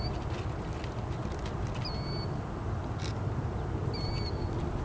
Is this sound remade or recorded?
recorded